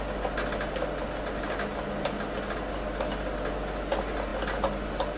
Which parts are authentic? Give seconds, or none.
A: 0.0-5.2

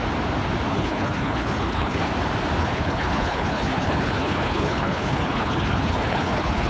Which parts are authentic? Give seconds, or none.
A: 0.0-0.7; 2.1-2.6

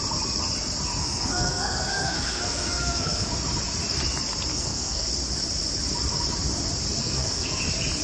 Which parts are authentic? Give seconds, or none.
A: 0.0-1.0; 3.3-4.5; 5.1-7.0; 7.6-8.0